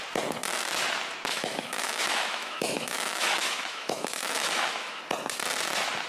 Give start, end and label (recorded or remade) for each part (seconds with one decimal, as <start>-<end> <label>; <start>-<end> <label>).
0.0-1.3 recorded; 1.3-5.0 remade; 5.0-6.1 recorded